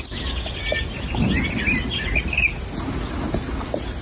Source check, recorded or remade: recorded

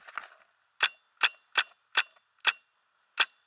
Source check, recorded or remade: recorded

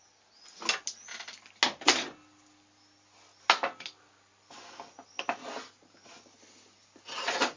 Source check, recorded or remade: recorded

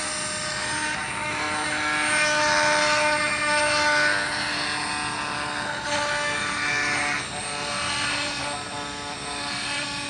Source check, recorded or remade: recorded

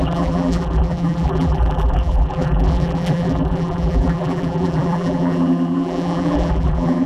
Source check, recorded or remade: remade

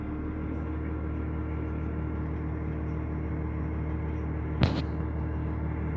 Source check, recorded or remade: recorded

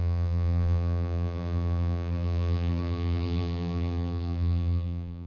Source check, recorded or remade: remade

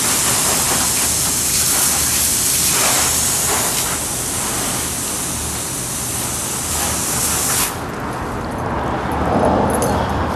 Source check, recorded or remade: recorded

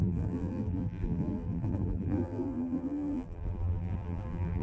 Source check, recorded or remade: remade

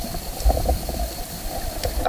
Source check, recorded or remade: remade